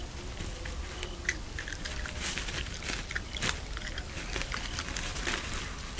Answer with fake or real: real